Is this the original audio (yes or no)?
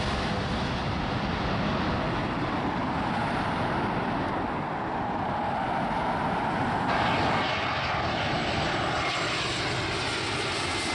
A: yes